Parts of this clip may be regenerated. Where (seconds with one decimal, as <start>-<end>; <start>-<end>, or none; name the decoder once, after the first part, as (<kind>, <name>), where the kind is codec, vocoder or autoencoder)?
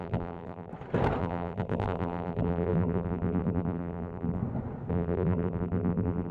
0.0-0.7 (vocoder, BigVGAN v2); 1.2-4.4; 4.9-6.3